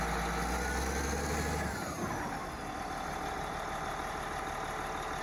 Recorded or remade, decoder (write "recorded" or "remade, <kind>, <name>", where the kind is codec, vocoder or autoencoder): recorded